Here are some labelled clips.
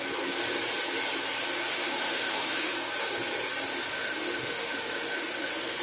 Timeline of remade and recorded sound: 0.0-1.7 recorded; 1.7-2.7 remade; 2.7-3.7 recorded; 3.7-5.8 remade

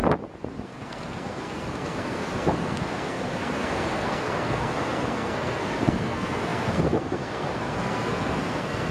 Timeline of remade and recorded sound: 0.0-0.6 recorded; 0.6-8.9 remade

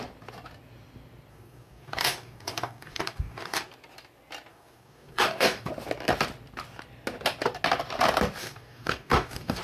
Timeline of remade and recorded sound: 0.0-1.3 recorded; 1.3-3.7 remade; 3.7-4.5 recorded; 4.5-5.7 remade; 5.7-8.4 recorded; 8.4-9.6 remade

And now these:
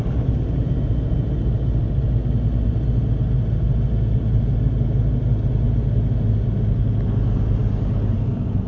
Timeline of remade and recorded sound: 0.0-8.7 recorded